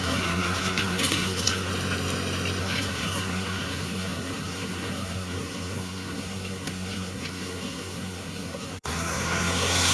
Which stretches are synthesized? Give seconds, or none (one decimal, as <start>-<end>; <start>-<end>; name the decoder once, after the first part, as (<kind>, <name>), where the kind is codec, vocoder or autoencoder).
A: 0.0-1.7 (codec, SNAC); 2.6-9.9